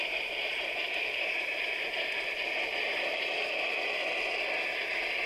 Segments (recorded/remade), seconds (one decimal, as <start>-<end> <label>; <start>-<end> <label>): 0.0-3.2 remade; 3.2-5.3 recorded